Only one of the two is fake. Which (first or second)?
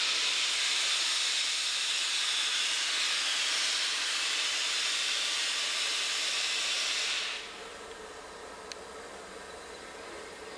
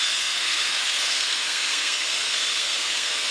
second